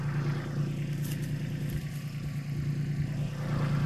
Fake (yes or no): no